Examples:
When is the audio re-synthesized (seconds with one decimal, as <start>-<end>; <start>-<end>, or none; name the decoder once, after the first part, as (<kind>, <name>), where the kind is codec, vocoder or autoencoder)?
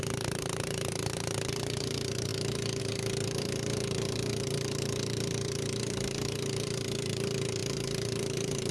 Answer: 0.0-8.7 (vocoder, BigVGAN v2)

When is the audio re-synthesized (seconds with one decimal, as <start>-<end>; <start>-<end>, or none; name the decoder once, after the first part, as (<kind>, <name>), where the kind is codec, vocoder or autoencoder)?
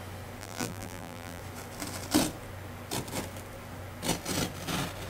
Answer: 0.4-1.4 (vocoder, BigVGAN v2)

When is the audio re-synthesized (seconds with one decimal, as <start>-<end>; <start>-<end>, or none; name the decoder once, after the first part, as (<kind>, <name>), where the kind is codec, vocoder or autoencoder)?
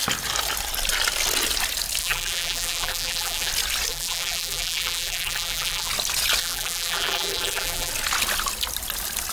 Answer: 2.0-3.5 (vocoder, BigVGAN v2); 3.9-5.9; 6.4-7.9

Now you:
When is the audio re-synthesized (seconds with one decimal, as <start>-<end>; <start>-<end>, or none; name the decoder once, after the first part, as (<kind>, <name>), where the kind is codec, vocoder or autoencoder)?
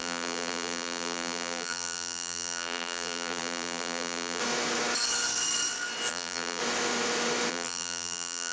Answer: 0.0-4.4 (vocoder, BigVGAN v2); 6.1-6.6; 7.5-8.5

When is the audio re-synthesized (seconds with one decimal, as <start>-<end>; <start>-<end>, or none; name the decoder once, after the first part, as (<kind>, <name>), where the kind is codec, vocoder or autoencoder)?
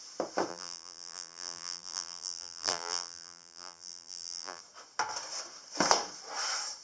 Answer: 0.5-4.6 (vocoder, BigVGAN v2)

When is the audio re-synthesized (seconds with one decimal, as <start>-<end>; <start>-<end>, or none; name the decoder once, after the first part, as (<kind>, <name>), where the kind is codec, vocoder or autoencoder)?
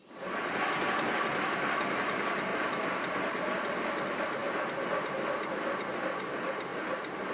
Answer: 2.5-3.5 (vocoder, BigVGAN v2)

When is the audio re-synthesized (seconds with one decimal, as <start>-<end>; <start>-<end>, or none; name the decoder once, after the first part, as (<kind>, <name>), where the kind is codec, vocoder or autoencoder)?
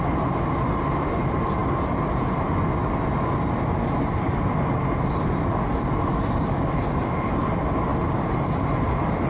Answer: 7.9-8.7 (vocoder, BigVGAN v2)